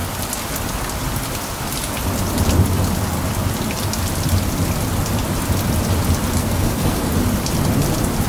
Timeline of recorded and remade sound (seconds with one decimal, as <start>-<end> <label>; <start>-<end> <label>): 0.0-6.4 recorded; 6.4-7.1 remade; 7.1-8.3 recorded